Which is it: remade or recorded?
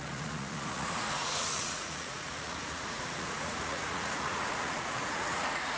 remade